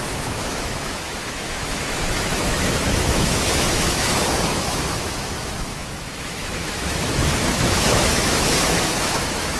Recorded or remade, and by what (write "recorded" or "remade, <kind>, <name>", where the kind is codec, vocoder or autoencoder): remade, autoencoder, DAC-VAE